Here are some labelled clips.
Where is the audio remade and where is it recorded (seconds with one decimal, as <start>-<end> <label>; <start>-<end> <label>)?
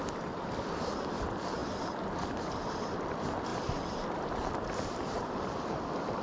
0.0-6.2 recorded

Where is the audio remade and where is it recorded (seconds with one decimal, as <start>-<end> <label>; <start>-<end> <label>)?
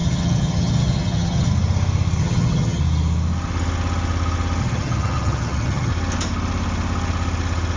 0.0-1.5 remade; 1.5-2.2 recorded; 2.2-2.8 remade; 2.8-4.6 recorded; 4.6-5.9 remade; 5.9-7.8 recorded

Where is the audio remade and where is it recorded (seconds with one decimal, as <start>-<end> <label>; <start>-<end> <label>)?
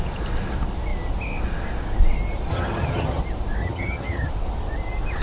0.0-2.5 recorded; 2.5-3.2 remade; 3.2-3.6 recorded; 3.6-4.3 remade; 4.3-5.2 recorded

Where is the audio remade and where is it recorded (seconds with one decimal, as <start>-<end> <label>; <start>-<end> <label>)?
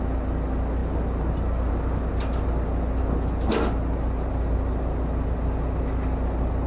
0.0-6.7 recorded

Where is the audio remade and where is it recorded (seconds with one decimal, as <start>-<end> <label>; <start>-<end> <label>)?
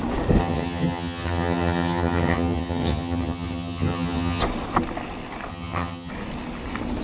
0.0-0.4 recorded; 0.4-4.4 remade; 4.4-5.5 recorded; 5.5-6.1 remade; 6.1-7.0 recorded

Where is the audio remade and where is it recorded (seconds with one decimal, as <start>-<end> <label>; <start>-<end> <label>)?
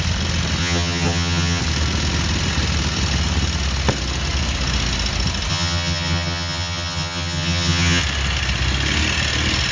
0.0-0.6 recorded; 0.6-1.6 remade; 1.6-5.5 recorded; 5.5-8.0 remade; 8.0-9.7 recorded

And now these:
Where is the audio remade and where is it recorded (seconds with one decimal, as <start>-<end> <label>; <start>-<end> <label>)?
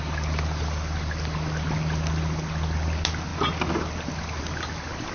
0.0-5.1 recorded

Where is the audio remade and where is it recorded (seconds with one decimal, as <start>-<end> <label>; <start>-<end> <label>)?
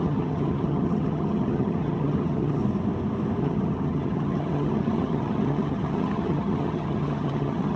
0.0-2.6 remade; 2.6-3.4 recorded; 3.4-7.8 remade